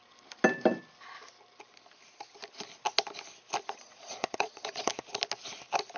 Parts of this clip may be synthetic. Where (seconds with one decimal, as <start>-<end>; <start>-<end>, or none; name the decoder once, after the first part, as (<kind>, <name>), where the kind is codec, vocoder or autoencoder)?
3.6-4.9 (vocoder, Vocos)